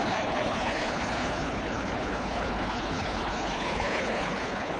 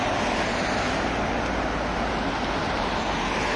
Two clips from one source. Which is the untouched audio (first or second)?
second